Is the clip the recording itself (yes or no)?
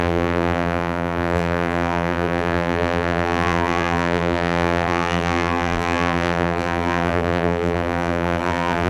no